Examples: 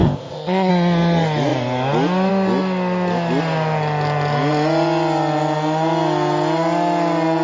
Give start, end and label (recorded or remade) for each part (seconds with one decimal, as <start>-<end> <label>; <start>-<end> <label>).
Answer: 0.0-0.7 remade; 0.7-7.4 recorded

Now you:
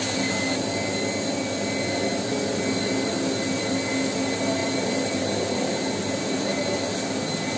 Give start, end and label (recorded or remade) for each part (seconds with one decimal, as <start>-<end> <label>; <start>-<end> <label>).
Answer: 0.0-4.6 recorded; 4.6-5.7 remade; 5.7-6.5 recorded; 6.5-7.6 remade

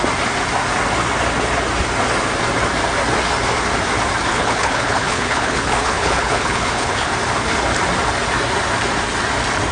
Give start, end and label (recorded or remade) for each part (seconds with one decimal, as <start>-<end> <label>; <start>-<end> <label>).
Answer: 0.0-4.3 recorded; 4.3-7.1 remade; 7.1-9.7 recorded

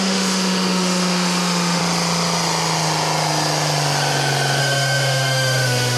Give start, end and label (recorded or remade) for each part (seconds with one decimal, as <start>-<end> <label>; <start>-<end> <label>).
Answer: 0.0-1.8 remade; 1.8-4.6 recorded; 4.6-6.0 remade